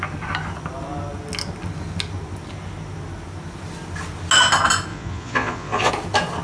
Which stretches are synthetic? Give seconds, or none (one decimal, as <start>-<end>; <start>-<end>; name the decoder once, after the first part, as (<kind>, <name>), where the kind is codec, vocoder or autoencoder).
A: 4.9-5.9 (vocoder, Vocos)